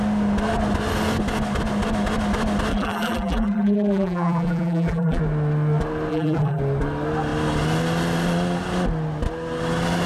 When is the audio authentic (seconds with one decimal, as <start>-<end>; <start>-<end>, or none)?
0.0-2.7; 5.2-6.1; 6.6-10.1